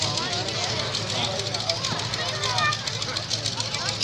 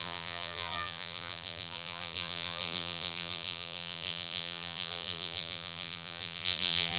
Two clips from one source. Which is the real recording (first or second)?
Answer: first